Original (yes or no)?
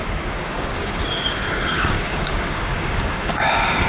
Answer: no